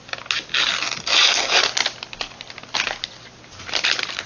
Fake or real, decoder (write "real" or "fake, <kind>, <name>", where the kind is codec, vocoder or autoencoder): real